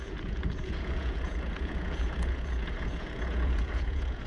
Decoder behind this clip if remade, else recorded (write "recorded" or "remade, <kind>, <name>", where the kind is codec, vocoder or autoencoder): remade, vocoder, Vocos